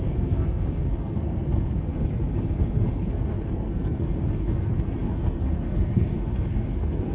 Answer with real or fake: fake